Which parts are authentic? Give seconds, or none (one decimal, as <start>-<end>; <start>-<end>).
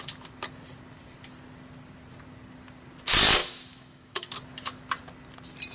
0.0-3.4; 4.3-5.7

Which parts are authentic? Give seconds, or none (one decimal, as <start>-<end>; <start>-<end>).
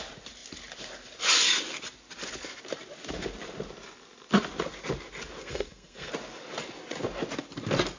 0.0-5.4; 6.1-8.0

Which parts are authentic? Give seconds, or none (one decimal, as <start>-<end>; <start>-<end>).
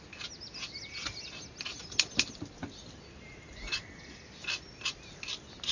0.0-5.7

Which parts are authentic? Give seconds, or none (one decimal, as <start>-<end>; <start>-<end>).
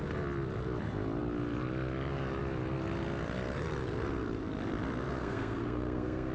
0.0-5.2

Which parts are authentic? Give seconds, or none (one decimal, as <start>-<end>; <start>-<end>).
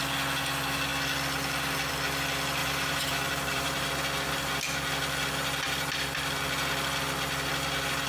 0.0-2.6; 3.9-8.1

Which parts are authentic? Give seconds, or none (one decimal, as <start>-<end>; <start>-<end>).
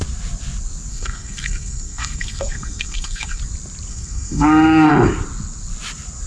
0.0-0.9; 3.4-3.9; 4.9-6.3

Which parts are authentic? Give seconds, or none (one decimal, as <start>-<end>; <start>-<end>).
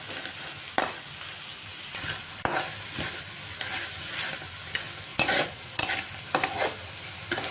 0.0-5.1; 5.9-7.5